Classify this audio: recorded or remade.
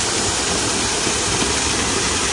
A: recorded